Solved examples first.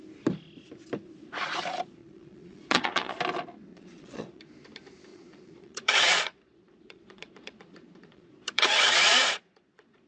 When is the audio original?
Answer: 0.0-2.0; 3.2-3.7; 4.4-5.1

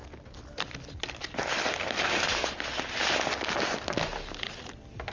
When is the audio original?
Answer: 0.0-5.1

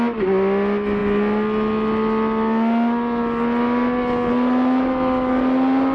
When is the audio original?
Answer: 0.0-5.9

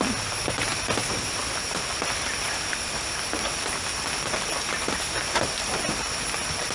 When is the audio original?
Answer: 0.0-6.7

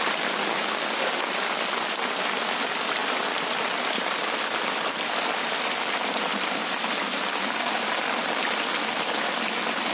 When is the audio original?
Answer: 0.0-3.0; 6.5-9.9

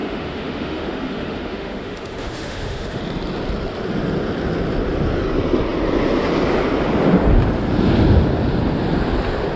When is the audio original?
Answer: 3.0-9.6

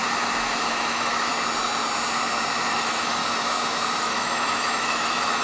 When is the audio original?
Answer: 0.0-0.7; 1.3-2.7; 3.2-4.0